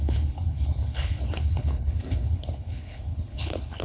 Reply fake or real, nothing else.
fake